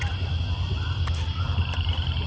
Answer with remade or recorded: recorded